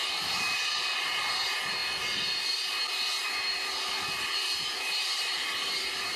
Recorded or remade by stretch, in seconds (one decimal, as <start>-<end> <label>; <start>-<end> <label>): 0.0-1.8 remade; 1.8-4.8 recorded; 4.8-6.2 remade